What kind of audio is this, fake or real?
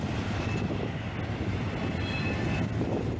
real